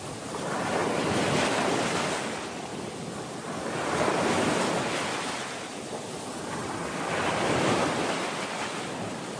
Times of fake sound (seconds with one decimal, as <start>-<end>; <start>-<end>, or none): 2.7-4.0; 6.6-8.5